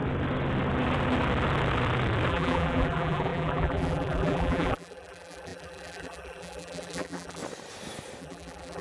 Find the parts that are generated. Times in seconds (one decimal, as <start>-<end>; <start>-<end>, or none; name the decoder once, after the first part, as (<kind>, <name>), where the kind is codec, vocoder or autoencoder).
2.3-7.4 (vocoder, BigVGAN v2); 8.2-8.8